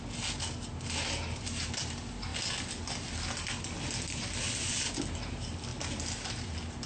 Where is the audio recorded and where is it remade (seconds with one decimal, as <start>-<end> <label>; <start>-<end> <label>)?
0.0-6.9 recorded